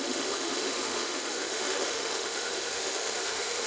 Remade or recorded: remade